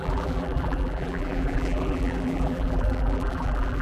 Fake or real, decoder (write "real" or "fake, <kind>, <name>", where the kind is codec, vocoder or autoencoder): fake, vocoder, BigVGAN v2